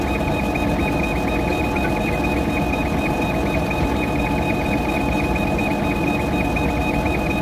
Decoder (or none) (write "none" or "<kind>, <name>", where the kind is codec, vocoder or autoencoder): none